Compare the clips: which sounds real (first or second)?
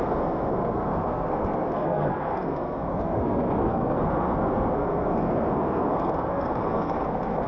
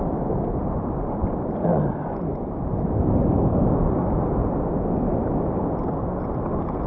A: second